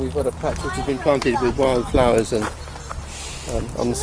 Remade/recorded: recorded